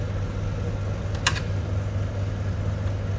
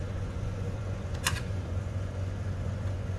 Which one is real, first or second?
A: first